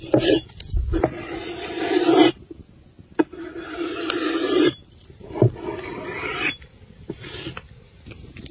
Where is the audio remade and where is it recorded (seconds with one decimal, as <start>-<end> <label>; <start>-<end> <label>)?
0.0-8.5 recorded